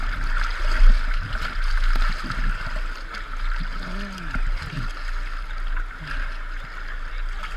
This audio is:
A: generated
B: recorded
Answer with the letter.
B